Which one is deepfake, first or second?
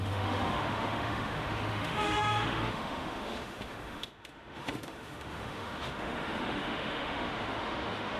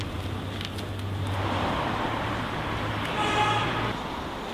first